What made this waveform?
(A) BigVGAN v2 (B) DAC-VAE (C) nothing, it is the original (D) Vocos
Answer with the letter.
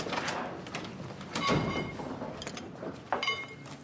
C